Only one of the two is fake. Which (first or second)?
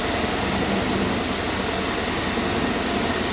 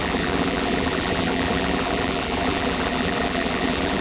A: second